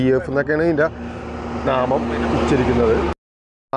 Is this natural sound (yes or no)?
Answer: yes